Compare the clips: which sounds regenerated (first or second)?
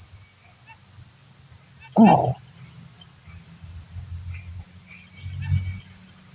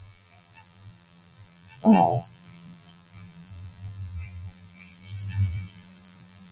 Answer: second